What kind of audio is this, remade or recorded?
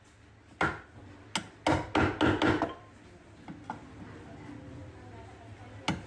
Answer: recorded